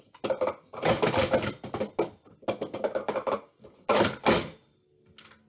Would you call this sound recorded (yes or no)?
yes